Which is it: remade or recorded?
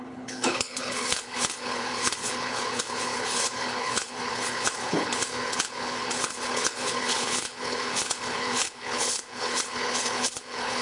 remade